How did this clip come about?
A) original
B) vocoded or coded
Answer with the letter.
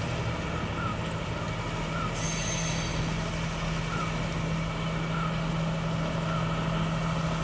A